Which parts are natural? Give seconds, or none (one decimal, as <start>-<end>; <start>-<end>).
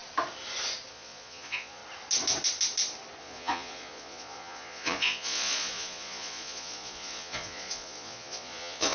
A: 0.0-0.9; 1.8-3.2